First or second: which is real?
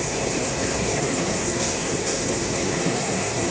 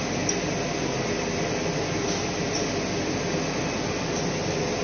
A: second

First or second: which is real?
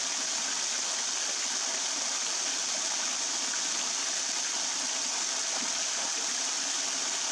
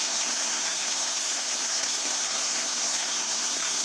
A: first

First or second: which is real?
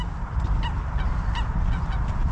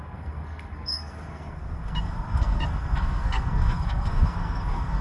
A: first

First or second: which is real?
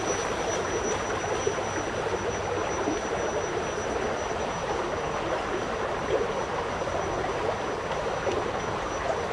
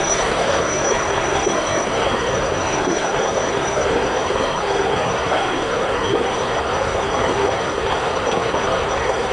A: first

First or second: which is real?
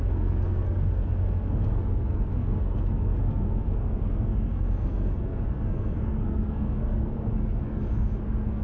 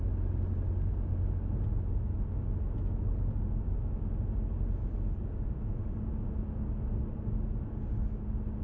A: second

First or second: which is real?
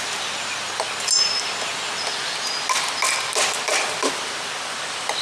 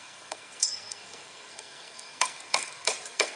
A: first